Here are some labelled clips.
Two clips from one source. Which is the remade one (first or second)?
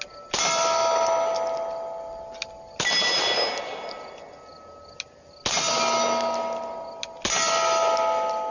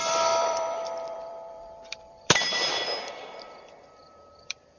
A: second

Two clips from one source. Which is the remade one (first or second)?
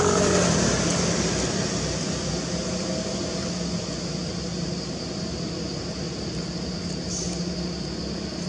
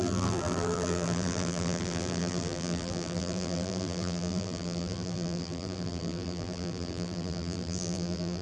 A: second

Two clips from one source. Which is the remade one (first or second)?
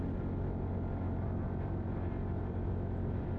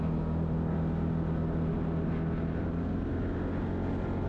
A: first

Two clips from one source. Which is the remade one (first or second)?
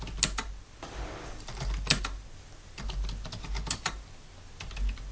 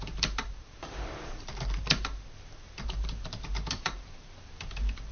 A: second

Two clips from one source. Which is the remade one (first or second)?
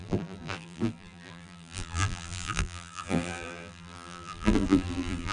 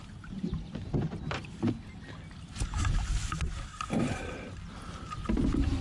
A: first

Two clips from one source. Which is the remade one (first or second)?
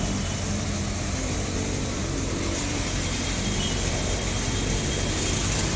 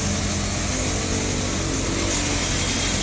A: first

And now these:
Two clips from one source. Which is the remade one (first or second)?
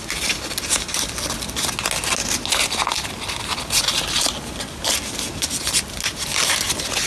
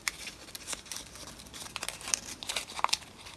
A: second